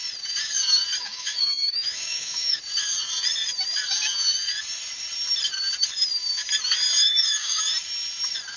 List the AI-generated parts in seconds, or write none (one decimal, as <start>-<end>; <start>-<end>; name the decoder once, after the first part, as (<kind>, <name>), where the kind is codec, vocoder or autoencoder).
1.0-2.6 (autoencoder, DAC-VAE); 7.0-7.6